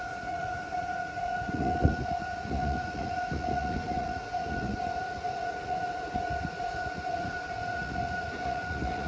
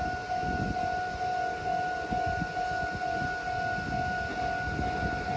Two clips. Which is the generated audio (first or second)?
first